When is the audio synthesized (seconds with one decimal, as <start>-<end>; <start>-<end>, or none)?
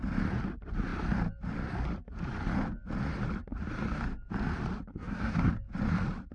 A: 4.9-5.5